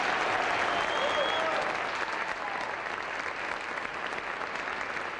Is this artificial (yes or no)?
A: no